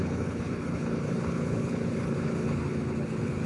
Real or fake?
fake